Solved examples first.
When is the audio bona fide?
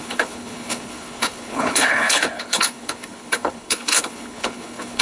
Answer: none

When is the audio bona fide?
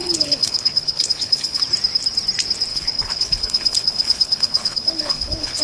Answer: 1.6-2.7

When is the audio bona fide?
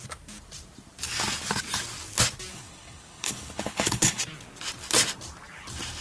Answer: 0.0-2.5; 4.2-6.0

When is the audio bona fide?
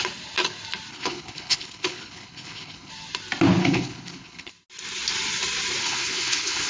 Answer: 0.0-0.9; 2.9-3.6; 4.5-5.8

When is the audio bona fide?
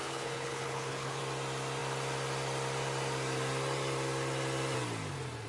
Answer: 1.2-5.5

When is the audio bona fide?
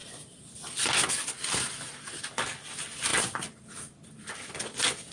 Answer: 0.0-5.1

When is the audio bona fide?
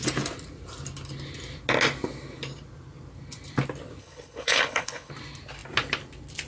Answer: 0.0-4.0; 5.1-6.5